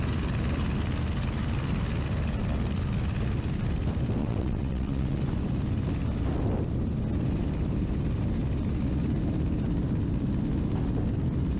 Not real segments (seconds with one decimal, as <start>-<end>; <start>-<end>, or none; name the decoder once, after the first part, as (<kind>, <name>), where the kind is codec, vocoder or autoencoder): 4.2-5.2 (vocoder, WaveNeXt)